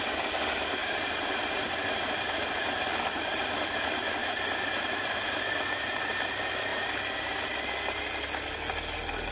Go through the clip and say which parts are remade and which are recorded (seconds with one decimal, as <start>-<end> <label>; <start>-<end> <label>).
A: 0.0-0.8 recorded; 0.8-2.4 remade; 2.4-4.2 recorded; 4.2-6.0 remade; 6.0-9.3 recorded